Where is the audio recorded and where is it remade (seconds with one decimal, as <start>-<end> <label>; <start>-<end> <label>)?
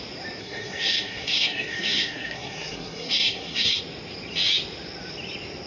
0.0-0.4 recorded; 0.4-3.8 remade; 3.8-5.7 recorded